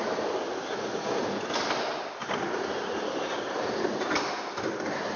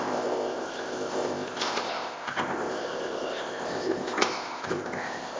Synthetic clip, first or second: second